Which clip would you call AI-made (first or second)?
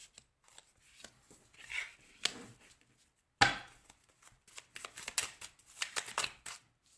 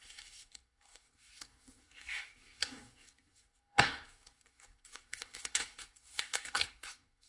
second